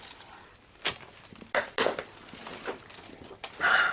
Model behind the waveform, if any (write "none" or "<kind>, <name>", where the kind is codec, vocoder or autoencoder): none